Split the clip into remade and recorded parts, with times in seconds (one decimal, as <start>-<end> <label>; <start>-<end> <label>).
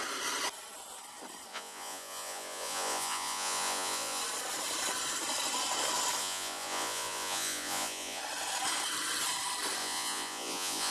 0.0-1.5 recorded; 1.5-4.2 remade; 4.2-6.2 recorded; 6.2-8.2 remade; 8.2-9.8 recorded; 9.8-10.9 remade